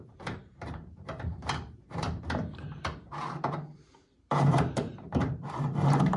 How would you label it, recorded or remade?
remade